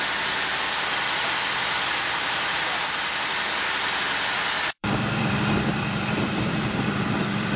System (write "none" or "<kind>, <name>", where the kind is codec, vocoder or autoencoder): vocoder, BigVGAN v2